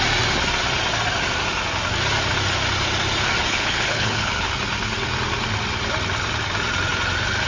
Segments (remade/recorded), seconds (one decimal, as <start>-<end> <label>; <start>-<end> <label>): 0.0-3.5 recorded; 3.5-4.5 remade; 4.5-7.5 recorded